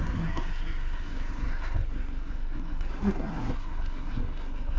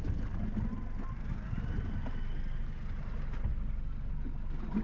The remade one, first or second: first